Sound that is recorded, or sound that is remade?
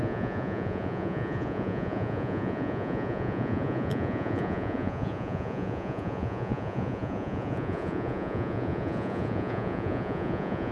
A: remade